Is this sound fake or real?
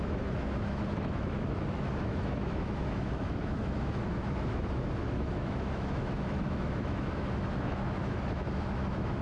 fake